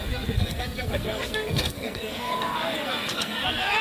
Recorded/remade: remade